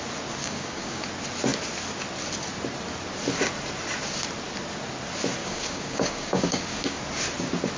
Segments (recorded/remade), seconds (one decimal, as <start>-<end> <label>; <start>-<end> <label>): 0.0-0.4 recorded; 0.4-1.0 remade; 1.0-5.4 recorded; 5.4-7.0 remade; 7.0-7.8 recorded